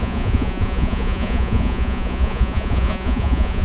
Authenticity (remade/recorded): remade